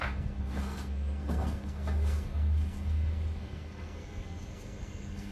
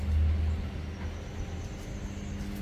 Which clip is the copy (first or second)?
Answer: first